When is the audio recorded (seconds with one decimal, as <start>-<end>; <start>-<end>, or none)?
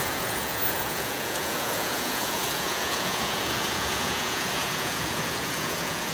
none